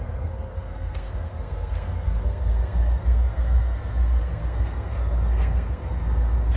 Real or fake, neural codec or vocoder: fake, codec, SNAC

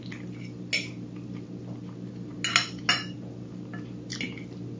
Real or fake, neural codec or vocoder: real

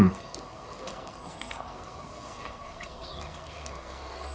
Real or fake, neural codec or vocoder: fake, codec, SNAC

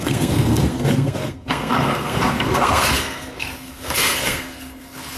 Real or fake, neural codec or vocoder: fake, codec, SNAC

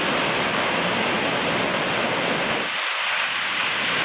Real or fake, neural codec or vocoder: real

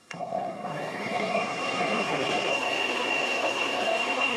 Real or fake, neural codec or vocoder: fake, codec, SNAC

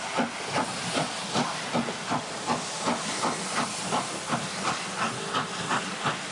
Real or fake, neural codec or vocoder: real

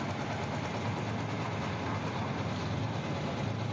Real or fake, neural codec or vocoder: real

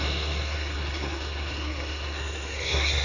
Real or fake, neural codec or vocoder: fake, codec, SNAC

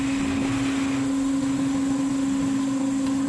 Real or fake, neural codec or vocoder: real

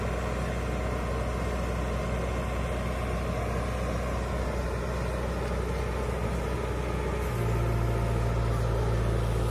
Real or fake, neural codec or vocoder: real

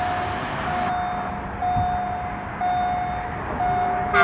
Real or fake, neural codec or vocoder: real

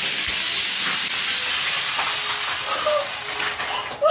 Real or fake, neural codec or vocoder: real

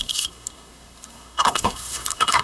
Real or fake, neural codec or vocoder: fake, codec, SNAC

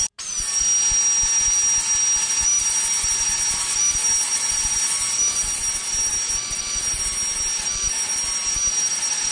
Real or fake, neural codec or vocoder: real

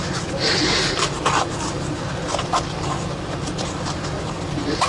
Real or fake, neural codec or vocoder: real